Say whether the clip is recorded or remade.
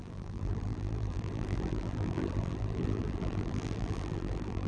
remade